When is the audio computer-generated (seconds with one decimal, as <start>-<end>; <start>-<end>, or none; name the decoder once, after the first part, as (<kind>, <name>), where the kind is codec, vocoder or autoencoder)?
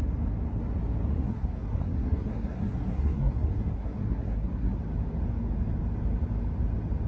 1.1-4.8 (codec, SNAC)